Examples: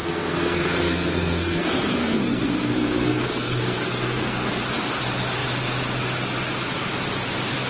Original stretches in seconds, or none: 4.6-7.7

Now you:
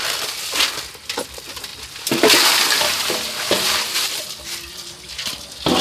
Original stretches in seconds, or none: 0.0-5.8

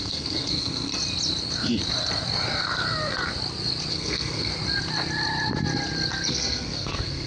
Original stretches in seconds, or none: 0.9-3.9; 4.5-6.3

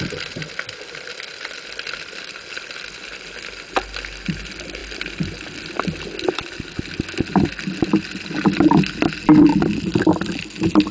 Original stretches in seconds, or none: 0.0-10.9

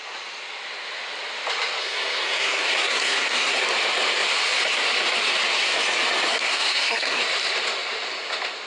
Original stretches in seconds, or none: 0.0-1.8; 3.6-6.3; 7.2-8.7

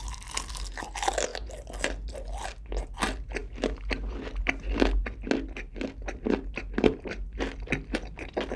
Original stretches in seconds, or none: 0.0-8.6

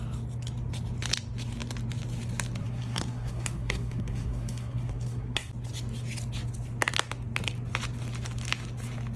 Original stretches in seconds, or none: 0.0-2.6; 5.5-9.2